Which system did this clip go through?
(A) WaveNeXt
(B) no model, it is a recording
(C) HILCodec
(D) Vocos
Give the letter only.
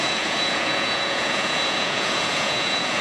D